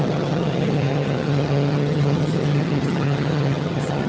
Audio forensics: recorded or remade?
remade